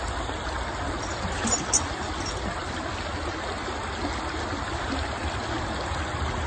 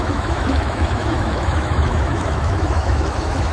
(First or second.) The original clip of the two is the first